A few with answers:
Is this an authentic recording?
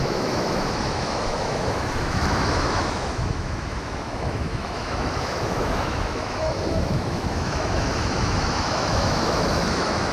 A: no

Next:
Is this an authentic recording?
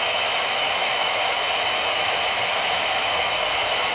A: no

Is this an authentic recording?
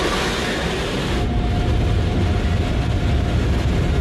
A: yes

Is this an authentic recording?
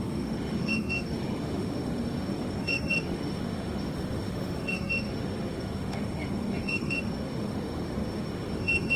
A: no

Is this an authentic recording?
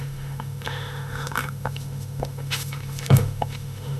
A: no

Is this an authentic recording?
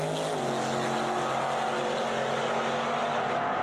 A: yes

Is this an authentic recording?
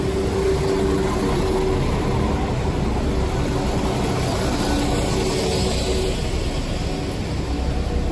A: yes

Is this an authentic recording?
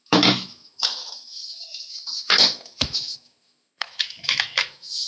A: no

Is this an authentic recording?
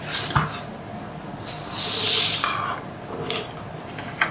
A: yes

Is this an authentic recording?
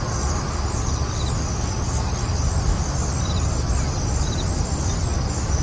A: yes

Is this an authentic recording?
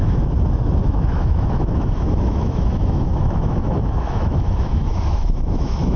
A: no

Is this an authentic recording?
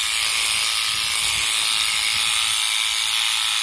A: yes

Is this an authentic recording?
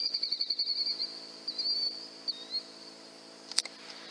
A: yes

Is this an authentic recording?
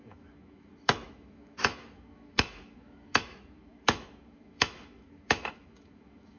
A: no